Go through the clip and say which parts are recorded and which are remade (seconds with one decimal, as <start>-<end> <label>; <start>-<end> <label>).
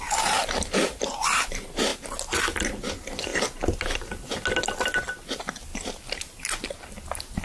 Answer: 0.0-7.4 recorded